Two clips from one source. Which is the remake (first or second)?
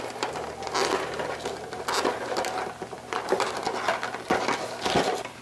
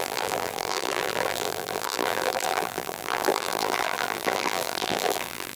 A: second